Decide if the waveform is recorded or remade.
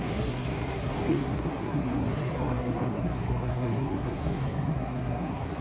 remade